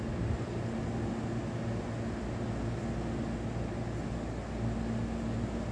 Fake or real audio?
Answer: real